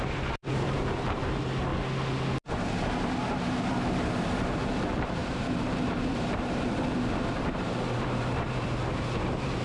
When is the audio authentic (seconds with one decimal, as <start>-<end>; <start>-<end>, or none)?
1.7-2.5